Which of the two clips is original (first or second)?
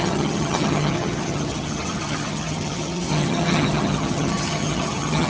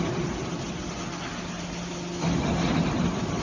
second